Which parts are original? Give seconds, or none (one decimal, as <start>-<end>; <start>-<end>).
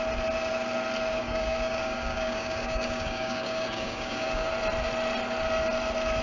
0.0-1.1; 4.5-6.2